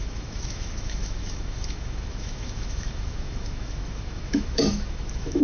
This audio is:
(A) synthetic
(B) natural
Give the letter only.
A